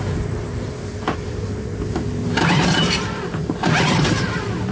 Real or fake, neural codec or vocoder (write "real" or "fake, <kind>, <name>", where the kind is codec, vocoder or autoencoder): fake, vocoder, BigVGAN v2